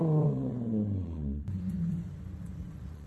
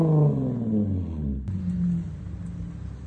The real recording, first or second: second